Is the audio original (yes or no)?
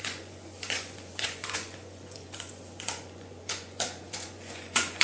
no